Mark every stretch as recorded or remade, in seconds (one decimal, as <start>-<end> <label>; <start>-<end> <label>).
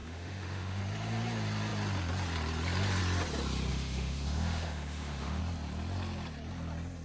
0.0-0.8 remade; 0.8-3.7 recorded; 3.7-5.4 remade; 5.4-7.0 recorded